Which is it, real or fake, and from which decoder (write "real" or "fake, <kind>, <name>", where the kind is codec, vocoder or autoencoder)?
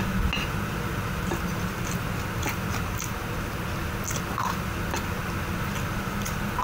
real